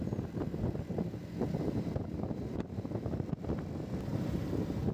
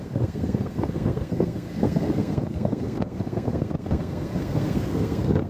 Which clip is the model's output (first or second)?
second